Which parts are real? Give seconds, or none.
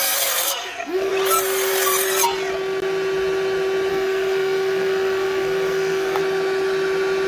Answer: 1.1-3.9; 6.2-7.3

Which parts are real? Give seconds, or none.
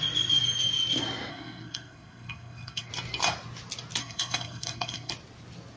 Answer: 0.0-1.3; 2.9-4.0; 5.1-5.8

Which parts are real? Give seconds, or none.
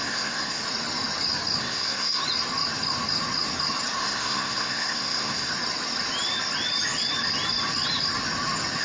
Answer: 0.6-1.6; 2.2-4.0; 5.5-8.8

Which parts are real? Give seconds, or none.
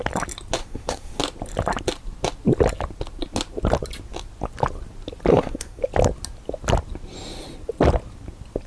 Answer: 0.0-0.6; 1.2-5.3; 5.8-8.7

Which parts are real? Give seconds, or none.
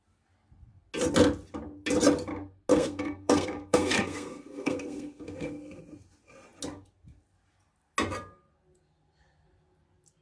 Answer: 0.0-2.7; 5.8-10.2